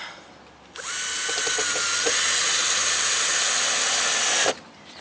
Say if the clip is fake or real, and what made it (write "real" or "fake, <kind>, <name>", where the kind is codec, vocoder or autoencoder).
fake, vocoder, BigVGAN v2